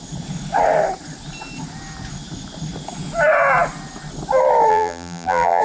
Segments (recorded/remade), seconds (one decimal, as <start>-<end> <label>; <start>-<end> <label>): 0.0-4.7 recorded; 4.7-5.6 remade